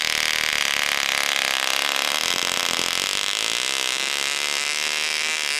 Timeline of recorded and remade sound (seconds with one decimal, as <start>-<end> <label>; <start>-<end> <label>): 0.0-5.6 recorded